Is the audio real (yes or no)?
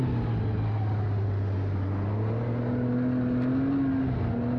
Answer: yes